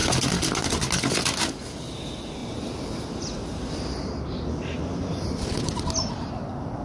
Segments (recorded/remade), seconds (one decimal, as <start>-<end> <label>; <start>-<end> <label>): 0.0-6.8 recorded